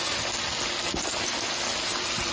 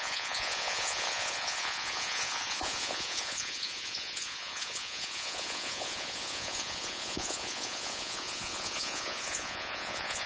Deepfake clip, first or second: second